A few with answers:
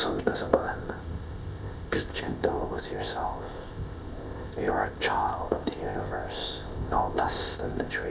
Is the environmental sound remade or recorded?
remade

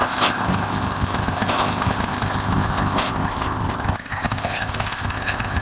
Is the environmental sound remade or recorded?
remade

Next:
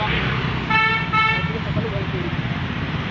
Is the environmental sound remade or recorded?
recorded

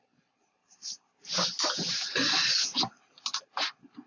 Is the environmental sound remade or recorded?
recorded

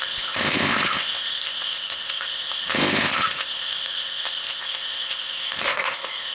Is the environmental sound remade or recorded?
remade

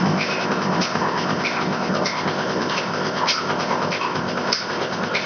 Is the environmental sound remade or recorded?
remade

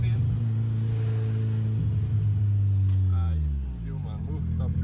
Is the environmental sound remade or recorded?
recorded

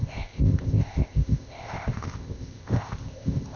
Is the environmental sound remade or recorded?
remade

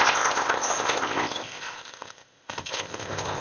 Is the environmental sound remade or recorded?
remade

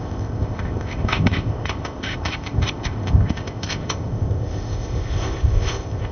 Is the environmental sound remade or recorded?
remade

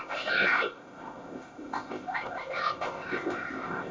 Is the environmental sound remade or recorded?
remade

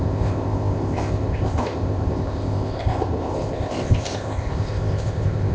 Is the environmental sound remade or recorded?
remade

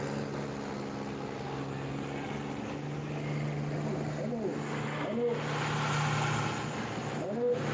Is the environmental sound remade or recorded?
recorded